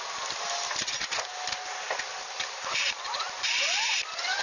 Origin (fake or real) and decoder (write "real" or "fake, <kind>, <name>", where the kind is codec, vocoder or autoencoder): real